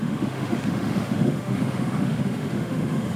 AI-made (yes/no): yes